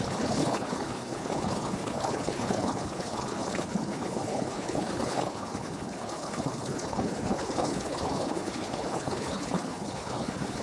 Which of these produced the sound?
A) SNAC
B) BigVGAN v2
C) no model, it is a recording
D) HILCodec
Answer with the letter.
D